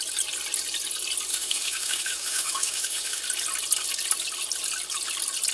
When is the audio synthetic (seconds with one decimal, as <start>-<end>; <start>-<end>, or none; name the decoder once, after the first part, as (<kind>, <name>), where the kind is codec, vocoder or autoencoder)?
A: 1.3-3.2 (autoencoder, DAC-VAE)